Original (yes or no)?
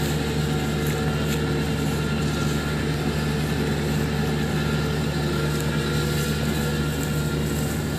yes